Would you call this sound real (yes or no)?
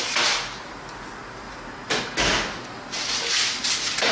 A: yes